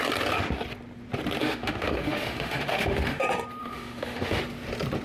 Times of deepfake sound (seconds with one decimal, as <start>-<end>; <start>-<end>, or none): 1.4-3.2; 3.6-4.4